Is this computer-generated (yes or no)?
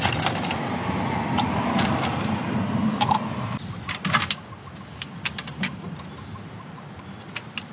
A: no